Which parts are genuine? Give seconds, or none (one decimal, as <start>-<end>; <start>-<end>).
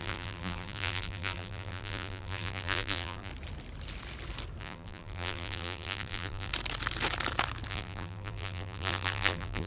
3.3-4.6; 6.5-7.7